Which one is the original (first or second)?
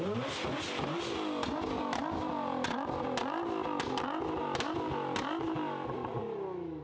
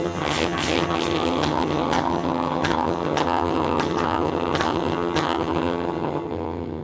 first